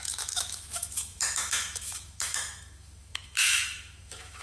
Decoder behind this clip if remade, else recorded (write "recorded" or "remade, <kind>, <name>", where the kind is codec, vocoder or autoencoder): remade, autoencoder, DAC-VAE